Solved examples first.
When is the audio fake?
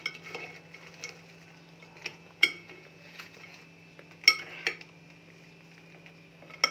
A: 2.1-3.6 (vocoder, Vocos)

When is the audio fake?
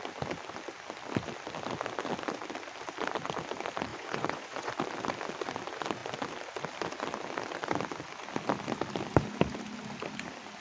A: 3.9-4.7 (vocoder, Vocos)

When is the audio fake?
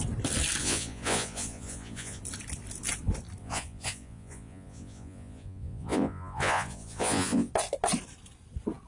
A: 0.6-2.2 (vocoder, Vocos); 3.4-7.5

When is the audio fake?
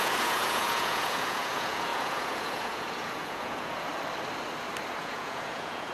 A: 0.0-3.9 (vocoder, Vocos); 5.0-5.9